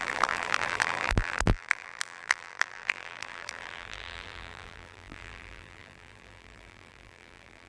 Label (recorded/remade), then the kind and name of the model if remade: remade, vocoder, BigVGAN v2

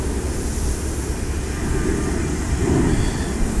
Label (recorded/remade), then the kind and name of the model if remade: recorded